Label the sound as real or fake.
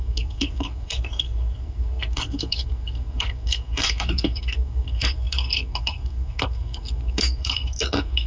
fake